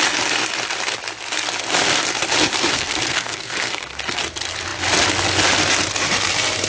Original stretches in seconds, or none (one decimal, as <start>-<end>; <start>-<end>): 0.0-2.7; 4.2-6.7